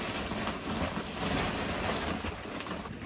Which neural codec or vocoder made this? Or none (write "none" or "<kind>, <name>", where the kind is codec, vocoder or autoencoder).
none